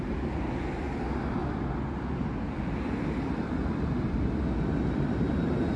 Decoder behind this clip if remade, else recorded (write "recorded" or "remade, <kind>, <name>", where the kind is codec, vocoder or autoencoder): recorded